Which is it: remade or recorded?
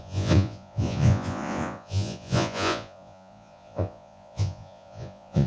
remade